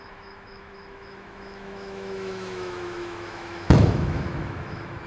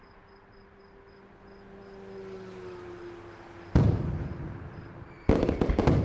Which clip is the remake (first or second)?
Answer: first